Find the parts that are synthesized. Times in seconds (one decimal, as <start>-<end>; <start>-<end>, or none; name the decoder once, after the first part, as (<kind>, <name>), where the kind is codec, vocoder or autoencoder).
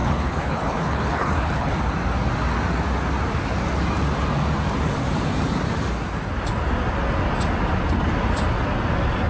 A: 0.0-1.8 (codec, HILCodec)